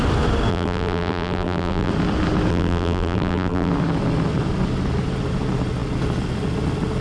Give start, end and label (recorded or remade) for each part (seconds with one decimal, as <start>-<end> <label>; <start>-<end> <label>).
0.0-0.5 recorded; 0.5-1.9 remade; 1.9-2.5 recorded; 2.5-3.7 remade; 3.7-7.0 recorded